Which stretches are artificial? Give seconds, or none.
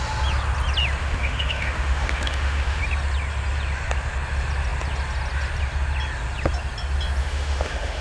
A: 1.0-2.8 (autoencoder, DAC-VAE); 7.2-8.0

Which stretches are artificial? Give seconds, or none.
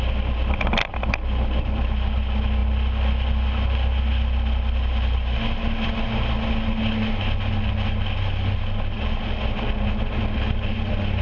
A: none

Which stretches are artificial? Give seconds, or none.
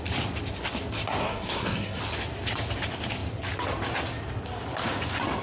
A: 1.2-2.0 (codec, SNAC)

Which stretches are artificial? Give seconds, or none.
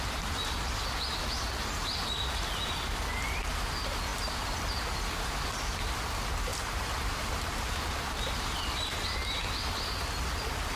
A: 6.5-8.9 (vocoder, BigVGAN v2)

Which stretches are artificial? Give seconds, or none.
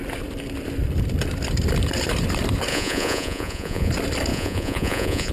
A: 2.7-3.9 (vocoder, Vocos); 4.3-5.3